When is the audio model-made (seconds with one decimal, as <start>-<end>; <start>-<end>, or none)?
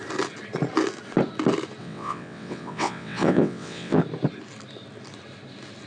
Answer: 1.8-4.0